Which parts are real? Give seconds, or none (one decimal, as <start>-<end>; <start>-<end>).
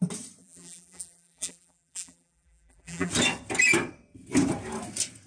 0.0-0.4; 3.1-5.3